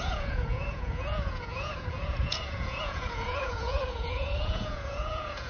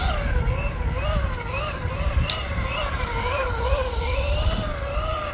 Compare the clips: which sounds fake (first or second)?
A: first